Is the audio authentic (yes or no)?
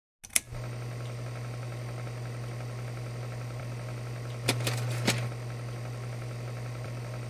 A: yes